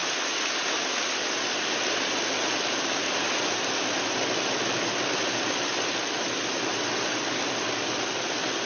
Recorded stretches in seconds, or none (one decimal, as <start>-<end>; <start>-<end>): 0.0-8.7